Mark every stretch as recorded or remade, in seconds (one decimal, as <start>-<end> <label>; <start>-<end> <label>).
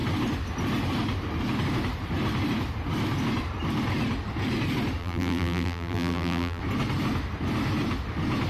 0.0-5.0 recorded; 5.0-6.6 remade; 6.6-8.5 recorded